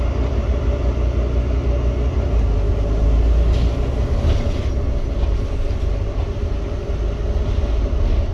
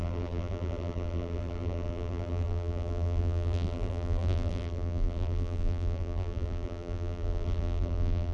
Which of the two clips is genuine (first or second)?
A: first